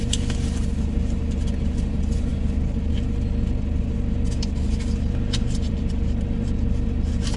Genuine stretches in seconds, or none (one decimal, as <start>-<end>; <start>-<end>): 0.0-7.4